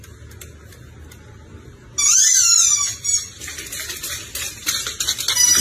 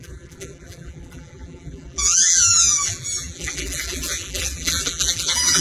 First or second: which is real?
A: first